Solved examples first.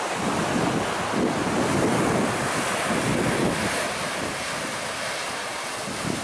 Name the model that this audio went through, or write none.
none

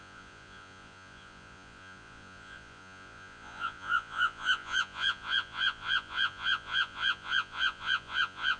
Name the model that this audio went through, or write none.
vocoder, Vocos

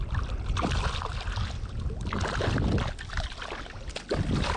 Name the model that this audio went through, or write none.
none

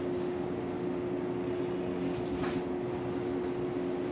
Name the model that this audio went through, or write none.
none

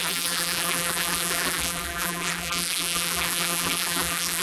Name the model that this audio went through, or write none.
vocoder, BigVGAN v2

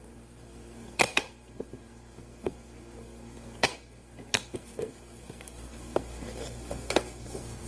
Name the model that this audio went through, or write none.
codec, SNAC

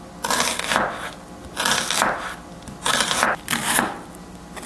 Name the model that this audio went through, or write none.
none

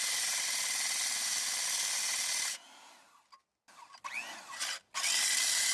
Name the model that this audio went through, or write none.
none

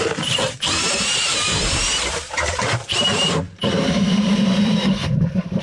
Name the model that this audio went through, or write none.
vocoder, BigVGAN v2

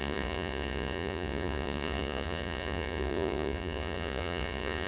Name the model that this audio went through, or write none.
vocoder, Vocos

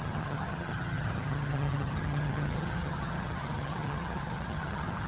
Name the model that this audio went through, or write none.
vocoder, HiFi-GAN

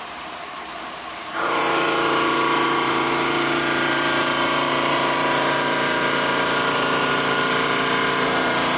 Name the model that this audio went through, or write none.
vocoder, BigVGAN v2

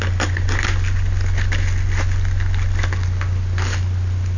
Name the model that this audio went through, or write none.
none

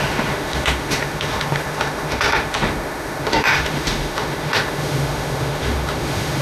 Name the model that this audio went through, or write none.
autoencoder, DAC-VAE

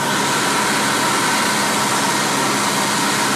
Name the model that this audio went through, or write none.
none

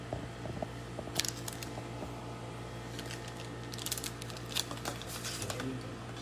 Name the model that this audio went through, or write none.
none